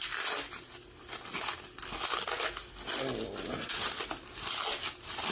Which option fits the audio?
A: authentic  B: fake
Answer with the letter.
A